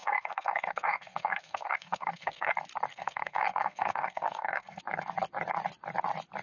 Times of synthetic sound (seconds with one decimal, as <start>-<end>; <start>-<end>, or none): 0.0-2.5; 2.9-4.8